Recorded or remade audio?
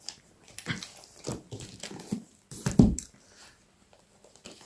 remade